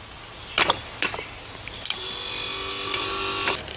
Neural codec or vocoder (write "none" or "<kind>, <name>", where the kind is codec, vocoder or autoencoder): none